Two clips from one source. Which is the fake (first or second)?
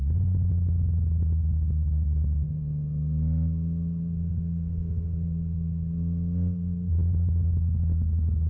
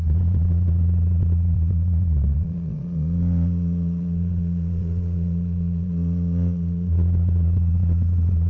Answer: second